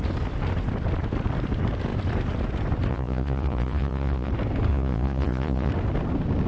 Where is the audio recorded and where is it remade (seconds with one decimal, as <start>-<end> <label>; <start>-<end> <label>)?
0.0-2.9 recorded; 2.9-4.3 remade; 4.3-4.7 recorded; 4.7-5.7 remade; 5.7-6.5 recorded